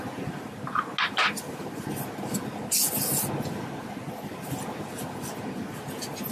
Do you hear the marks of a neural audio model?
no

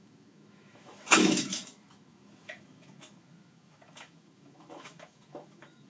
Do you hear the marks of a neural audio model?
yes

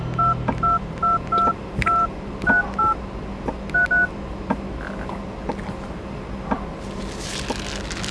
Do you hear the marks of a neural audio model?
no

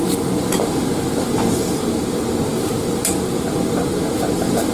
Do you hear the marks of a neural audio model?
no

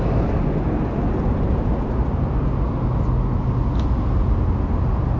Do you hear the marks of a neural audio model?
no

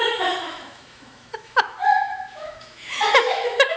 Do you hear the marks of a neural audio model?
yes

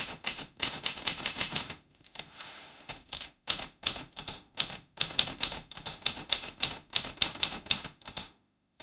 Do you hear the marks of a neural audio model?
yes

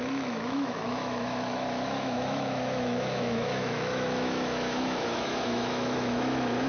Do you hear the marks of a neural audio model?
yes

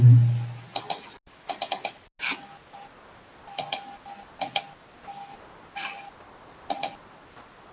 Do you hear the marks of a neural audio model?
no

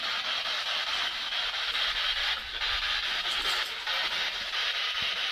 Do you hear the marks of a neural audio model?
no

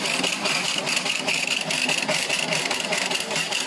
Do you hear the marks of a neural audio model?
no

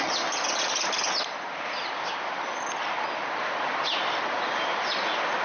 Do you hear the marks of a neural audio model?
no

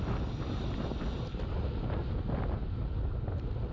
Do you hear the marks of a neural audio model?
no